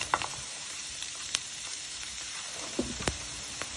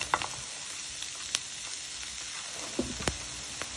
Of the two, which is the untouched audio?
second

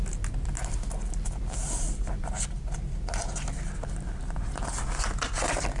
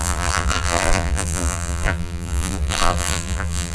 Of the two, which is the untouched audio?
first